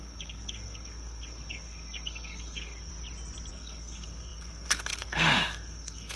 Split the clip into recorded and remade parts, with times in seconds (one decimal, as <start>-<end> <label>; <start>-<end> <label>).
0.0-2.9 remade; 2.9-3.5 recorded; 3.5-6.2 remade